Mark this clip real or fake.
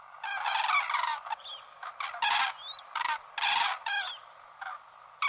real